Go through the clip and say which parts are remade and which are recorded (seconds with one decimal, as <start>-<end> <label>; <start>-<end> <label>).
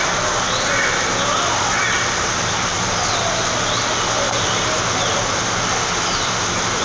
0.0-6.8 recorded